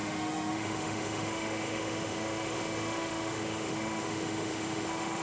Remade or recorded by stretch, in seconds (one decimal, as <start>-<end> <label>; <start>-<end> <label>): 0.0-5.2 remade